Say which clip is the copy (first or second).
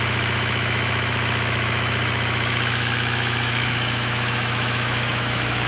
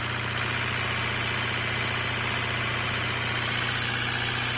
first